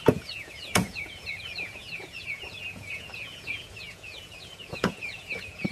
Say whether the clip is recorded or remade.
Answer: remade